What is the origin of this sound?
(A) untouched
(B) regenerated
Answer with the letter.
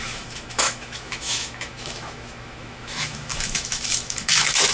B